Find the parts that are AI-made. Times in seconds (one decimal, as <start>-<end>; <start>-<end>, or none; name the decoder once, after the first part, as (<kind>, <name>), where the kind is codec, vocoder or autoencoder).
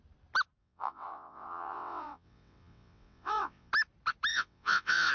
0.6-3.7 (vocoder, WaveNeXt); 4.3-5.1